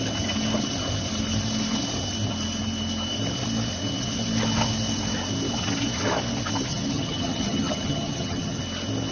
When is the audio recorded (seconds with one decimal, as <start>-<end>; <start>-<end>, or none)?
0.0-6.7; 8.6-9.1